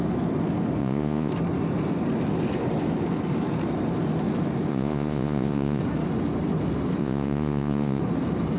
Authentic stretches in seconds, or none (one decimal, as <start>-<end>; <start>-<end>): 0.0-0.8; 1.3-4.7; 5.8-7.0; 8.0-8.6